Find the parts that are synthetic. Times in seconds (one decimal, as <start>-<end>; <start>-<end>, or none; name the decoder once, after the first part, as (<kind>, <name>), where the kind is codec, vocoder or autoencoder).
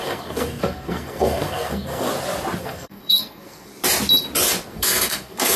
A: 0.0-2.1 (codec, SNAC); 2.6-3.7; 4.7-5.6